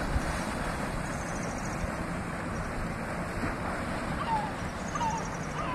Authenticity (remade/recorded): recorded